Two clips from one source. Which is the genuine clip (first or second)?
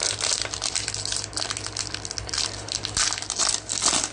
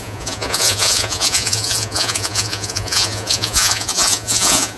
first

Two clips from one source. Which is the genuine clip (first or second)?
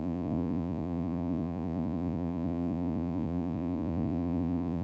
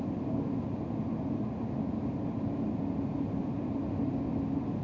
second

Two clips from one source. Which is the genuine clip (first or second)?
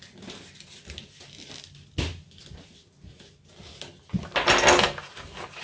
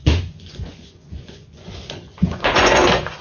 first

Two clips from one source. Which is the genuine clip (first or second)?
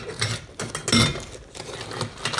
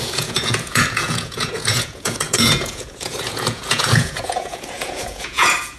first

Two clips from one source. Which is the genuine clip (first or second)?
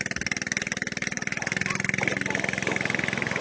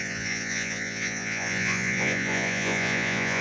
first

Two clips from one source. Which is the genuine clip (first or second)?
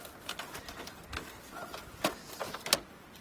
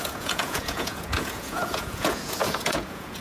first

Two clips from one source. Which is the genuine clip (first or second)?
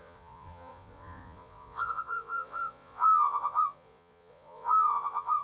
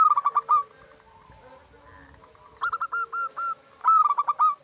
second